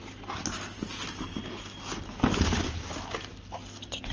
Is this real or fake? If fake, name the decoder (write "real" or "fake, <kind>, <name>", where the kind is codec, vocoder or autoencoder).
real